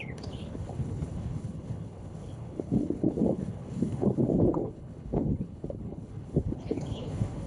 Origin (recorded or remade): remade